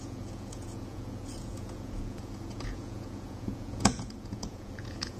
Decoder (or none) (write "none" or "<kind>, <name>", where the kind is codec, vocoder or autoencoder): vocoder, Vocos